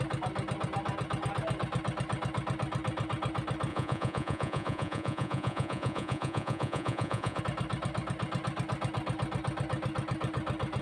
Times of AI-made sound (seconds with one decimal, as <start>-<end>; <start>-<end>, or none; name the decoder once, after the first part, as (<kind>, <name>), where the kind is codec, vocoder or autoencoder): 3.7-7.4 (vocoder, Vocos)